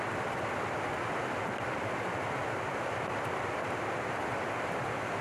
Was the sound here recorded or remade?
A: recorded